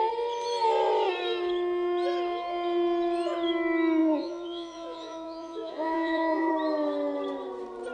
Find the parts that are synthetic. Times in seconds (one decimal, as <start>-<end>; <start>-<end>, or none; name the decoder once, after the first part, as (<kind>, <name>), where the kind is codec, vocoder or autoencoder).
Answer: 4.0-6.5 (vocoder, Vocos)